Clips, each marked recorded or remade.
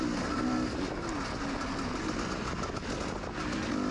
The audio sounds recorded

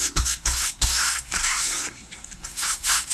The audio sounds remade